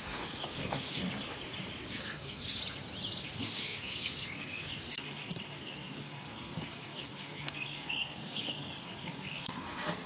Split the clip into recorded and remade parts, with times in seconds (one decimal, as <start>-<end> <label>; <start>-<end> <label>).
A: 0.0-1.0 remade; 1.0-1.9 recorded; 1.9-2.6 remade; 2.6-3.2 recorded; 3.2-10.1 remade